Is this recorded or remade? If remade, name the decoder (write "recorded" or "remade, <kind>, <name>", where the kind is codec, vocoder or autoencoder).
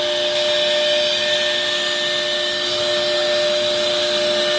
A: recorded